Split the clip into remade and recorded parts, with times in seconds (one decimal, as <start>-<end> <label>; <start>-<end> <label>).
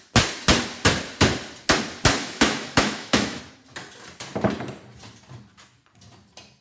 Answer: 0.0-2.2 recorded; 2.2-3.4 remade; 3.4-6.6 recorded